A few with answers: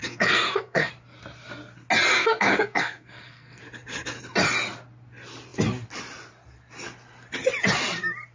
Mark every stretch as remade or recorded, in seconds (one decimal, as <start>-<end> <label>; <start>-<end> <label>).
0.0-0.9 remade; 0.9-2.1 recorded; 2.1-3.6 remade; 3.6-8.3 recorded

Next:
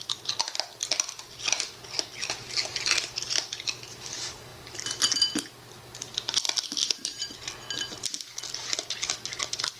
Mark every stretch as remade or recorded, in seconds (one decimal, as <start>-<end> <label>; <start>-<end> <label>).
0.0-4.5 recorded; 4.5-5.5 remade; 5.5-9.8 recorded

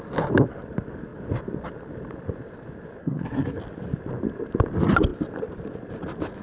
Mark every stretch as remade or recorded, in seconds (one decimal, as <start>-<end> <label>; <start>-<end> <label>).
0.0-3.0 recorded; 3.0-3.6 remade; 3.6-6.4 recorded

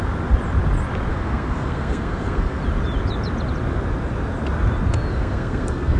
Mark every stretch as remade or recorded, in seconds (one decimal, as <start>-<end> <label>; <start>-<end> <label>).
0.0-1.1 recorded; 1.1-2.6 remade; 2.6-5.1 recorded; 5.1-6.0 remade

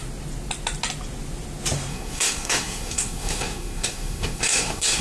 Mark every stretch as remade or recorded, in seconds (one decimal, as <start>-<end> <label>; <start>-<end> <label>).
0.0-1.9 recorded; 1.9-5.0 remade

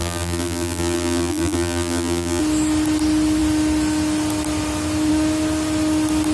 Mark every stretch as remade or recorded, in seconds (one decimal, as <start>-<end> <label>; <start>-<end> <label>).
0.0-2.4 remade; 2.4-6.3 recorded

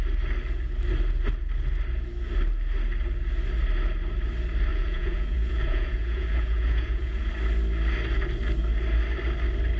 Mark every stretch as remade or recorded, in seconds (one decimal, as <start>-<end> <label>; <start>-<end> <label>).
0.0-4.7 recorded; 4.7-7.3 remade; 7.3-9.8 recorded

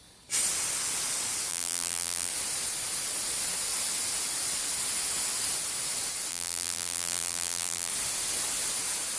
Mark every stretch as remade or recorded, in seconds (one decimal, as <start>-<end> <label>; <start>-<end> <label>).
0.0-1.5 recorded; 1.5-2.3 remade; 2.3-6.3 recorded; 6.3-7.9 remade; 7.9-9.2 recorded